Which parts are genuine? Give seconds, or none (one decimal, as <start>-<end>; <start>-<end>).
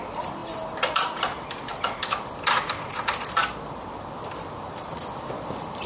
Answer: none